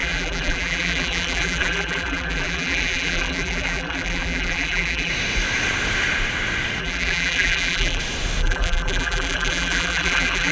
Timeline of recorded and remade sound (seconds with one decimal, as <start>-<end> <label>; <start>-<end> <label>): 0.0-5.1 remade; 5.1-6.8 recorded; 6.8-8.0 remade; 8.0-8.4 recorded; 8.4-10.5 remade